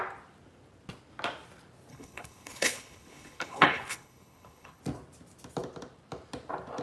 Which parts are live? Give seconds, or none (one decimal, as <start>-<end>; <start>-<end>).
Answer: 0.0-1.9; 4.8-6.8